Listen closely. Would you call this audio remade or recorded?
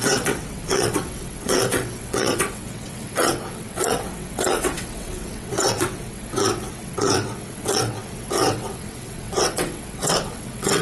remade